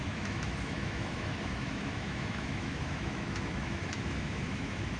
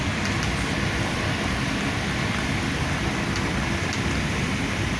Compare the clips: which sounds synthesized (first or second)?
first